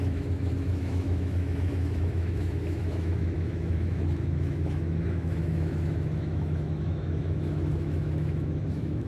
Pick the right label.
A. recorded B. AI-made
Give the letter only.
B